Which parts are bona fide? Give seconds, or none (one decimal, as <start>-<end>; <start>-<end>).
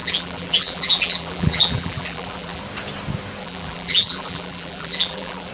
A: 2.6-3.4